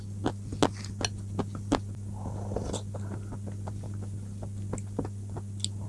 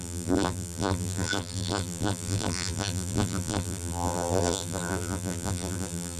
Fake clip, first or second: second